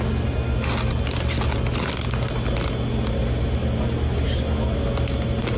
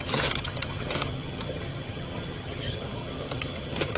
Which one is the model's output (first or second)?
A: second